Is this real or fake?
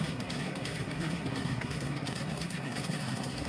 fake